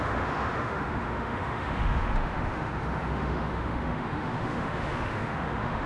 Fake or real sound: fake